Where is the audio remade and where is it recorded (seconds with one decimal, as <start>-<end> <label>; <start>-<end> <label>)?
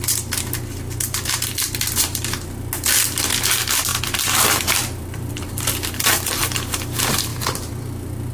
0.0-3.9 recorded; 3.9-6.4 remade; 6.4-7.3 recorded; 7.3-8.3 remade